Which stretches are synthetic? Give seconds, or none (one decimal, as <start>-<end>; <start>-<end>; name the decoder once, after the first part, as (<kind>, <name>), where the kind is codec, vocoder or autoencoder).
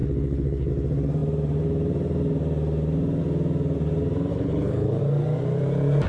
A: 0.0-0.7 (codec, HILCodec); 4.3-5.0